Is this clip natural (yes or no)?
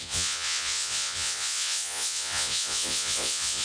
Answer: no